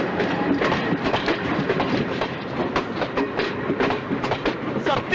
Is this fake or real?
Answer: fake